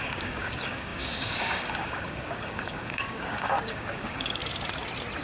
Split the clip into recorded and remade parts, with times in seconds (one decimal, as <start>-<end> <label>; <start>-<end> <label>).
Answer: 0.0-4.4 remade; 4.4-5.2 recorded